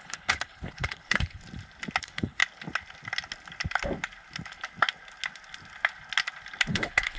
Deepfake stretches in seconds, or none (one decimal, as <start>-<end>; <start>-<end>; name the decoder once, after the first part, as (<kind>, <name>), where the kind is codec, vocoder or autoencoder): 0.0-1.4 (codec, HILCodec); 2.0-2.4; 6.7-7.2